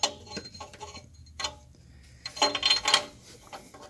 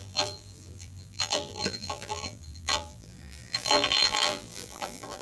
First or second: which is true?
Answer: first